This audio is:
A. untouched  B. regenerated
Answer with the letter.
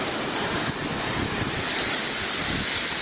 B